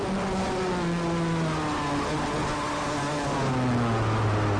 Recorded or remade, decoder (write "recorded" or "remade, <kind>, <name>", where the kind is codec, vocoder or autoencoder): recorded